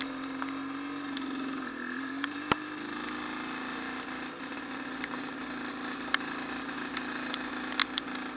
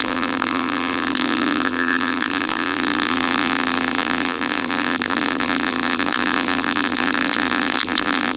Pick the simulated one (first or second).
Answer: second